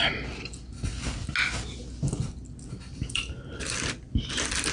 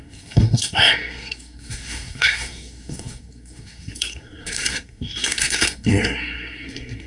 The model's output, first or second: second